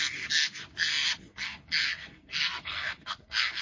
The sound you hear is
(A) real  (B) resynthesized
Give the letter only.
B